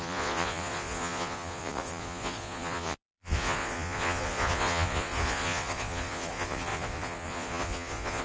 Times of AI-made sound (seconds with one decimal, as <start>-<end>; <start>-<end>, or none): 0.0-8.2